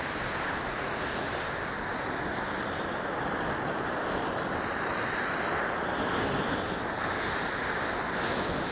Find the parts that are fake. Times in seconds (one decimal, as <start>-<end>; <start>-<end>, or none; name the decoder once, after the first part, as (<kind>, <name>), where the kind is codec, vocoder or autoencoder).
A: 0.7-1.3 (vocoder, Vocos)